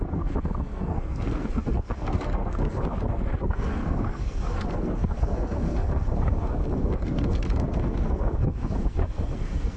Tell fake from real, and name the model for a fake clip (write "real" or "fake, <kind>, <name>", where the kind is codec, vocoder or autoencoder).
fake, codec, SNAC